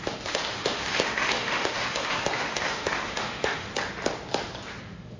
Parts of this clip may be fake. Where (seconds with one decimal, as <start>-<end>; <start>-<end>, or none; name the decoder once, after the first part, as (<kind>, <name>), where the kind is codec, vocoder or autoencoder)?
0.0-3.7 (autoencoder, DAC-VAE); 4.8-5.2